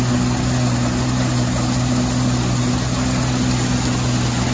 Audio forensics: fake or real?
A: real